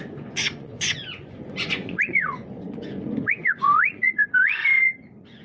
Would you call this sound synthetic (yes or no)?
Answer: yes